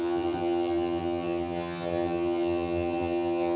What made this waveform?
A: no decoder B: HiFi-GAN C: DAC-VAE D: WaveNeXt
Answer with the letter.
B